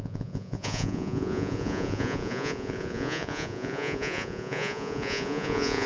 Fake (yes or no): yes